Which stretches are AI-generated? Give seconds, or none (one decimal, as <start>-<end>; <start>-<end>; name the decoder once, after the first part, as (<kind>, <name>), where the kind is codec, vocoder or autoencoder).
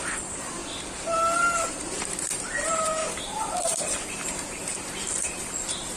0.0-0.6 (vocoder, BigVGAN v2); 1.7-4.7; 5.2-6.0